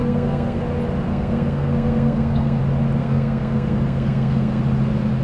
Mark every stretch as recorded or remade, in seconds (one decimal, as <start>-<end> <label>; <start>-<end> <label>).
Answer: 0.0-0.6 remade; 0.6-1.1 recorded; 1.1-2.6 remade; 2.6-3.0 recorded; 3.0-4.6 remade; 4.6-5.2 recorded